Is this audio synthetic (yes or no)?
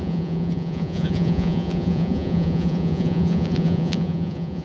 yes